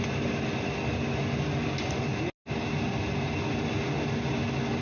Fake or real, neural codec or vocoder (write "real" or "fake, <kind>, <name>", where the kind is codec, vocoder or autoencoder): real